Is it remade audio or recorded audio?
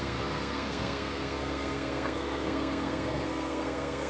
remade